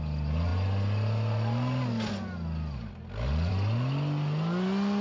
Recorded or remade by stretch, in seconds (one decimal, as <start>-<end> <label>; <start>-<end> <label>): 0.0-5.0 recorded